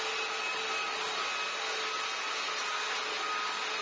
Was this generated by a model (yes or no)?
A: no